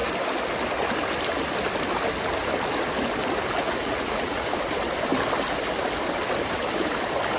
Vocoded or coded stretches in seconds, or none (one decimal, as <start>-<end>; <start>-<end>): 3.6-4.6

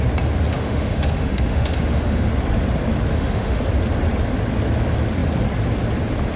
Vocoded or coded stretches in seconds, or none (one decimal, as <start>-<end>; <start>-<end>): 0.5-2.3; 3.1-3.6

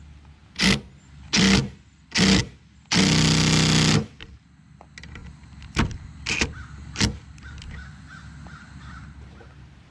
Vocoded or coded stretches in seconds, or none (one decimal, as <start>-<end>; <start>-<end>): 5.2-9.0

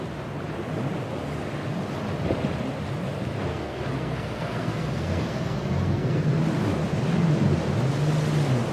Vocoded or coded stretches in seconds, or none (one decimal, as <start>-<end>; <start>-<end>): 3.5-6.4

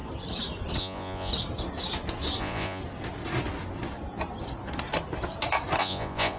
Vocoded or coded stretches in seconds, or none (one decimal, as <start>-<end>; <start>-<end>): 0.8-1.3; 2.4-2.8; 5.8-6.4

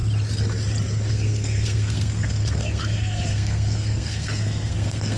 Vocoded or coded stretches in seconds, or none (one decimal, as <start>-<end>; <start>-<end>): 1.1-5.2

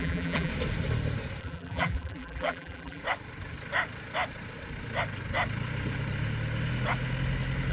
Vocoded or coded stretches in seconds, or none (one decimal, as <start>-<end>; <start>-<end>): 0.0-0.5; 1.4-3.0

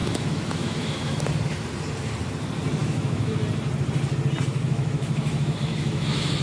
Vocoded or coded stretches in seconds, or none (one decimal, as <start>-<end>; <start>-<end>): 0.0-1.2; 2.8-3.4; 4.6-6.4